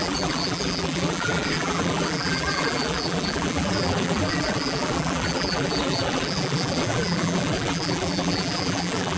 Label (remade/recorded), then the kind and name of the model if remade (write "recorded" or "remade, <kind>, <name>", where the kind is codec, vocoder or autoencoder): remade, vocoder, BigVGAN v2